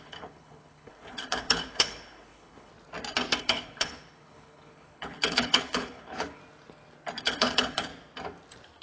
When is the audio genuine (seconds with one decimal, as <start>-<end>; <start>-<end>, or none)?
2.7-3.4; 6.4-7.2; 7.9-8.8